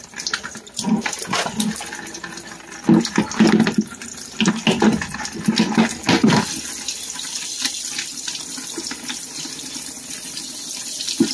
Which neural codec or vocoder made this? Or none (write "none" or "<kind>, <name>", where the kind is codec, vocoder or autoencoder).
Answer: none